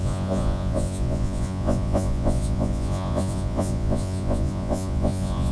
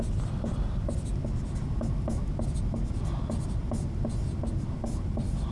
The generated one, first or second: first